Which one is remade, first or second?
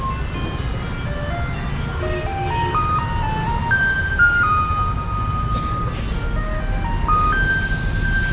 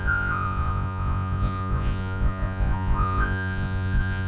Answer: second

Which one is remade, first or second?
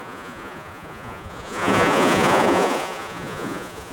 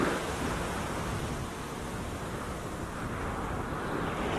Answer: first